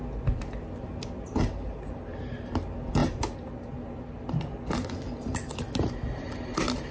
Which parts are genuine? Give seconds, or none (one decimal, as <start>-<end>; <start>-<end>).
0.0-6.9